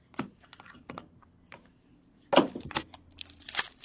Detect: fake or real real